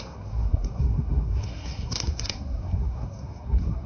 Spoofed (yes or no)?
yes